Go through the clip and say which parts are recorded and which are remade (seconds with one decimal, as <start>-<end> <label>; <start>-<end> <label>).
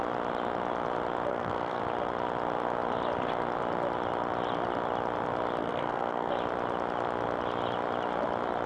0.0-1.3 recorded; 1.3-1.8 remade; 1.8-5.6 recorded; 5.6-6.3 remade; 6.3-8.7 recorded